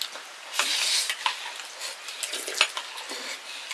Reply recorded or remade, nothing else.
recorded